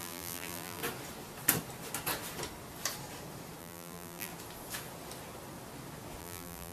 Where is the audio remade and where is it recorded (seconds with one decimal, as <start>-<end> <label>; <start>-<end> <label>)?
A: 0.0-0.8 remade; 0.8-3.6 recorded; 3.6-4.3 remade; 4.3-6.2 recorded; 6.2-6.7 remade